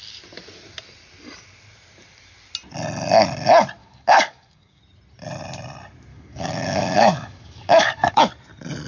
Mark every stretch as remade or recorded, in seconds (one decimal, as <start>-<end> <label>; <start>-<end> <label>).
0.0-3.8 recorded; 3.8-4.8 remade; 4.8-6.1 recorded; 6.1-8.2 remade; 8.2-8.9 recorded